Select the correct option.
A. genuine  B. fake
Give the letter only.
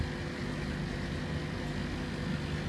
A